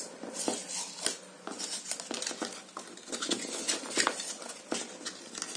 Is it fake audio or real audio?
real